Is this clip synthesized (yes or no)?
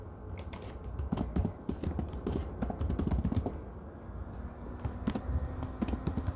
no